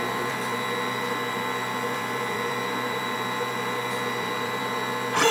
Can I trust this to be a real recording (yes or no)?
no